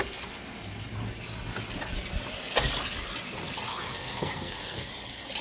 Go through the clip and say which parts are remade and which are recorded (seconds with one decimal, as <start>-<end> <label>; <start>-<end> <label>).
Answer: 0.0-3.7 recorded; 3.7-4.9 remade; 4.9-5.4 recorded

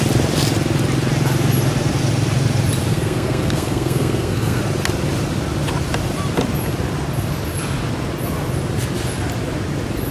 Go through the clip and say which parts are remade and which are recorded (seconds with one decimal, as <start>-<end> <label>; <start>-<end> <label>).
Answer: 0.0-2.9 recorded; 2.9-4.6 remade; 4.6-10.1 recorded

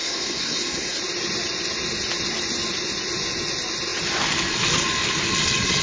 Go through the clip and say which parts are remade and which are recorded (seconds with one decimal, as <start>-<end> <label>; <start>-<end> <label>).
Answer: 0.0-1.0 remade; 1.0-5.8 recorded

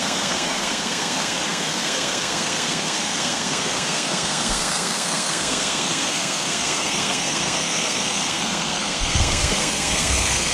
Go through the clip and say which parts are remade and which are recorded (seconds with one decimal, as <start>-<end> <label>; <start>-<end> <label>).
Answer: 0.0-10.5 remade

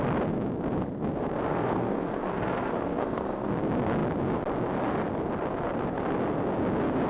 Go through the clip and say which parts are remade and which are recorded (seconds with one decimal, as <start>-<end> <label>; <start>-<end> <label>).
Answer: 0.0-1.5 recorded; 1.5-3.5 remade; 3.5-7.1 recorded

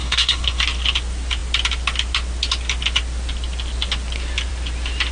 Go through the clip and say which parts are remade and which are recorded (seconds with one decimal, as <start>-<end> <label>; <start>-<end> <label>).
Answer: 0.0-0.6 remade; 0.6-5.1 recorded

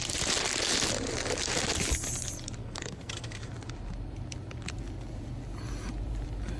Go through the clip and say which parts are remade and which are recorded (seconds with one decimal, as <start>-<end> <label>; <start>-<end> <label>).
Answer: 0.0-2.6 recorded; 2.6-3.5 remade; 3.5-6.6 recorded

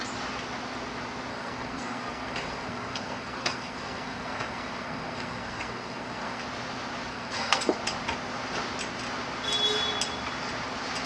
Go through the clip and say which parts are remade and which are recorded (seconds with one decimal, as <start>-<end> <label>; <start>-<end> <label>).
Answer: 0.0-1.3 recorded; 1.3-6.4 remade; 6.4-7.1 recorded; 7.1-7.8 remade; 7.8-11.1 recorded